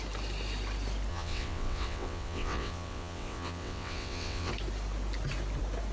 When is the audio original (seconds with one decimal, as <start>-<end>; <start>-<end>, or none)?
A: 0.0-1.1; 4.5-5.9